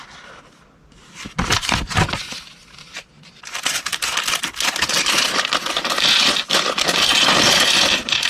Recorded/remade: recorded